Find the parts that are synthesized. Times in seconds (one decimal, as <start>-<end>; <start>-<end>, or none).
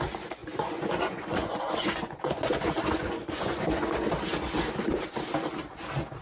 0.4-4.1